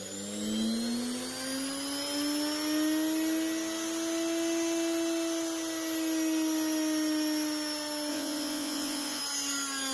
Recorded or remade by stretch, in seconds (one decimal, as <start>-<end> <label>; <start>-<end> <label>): 0.0-8.1 recorded; 8.1-9.2 remade; 9.2-9.9 recorded